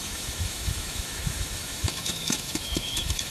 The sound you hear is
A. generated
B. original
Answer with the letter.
A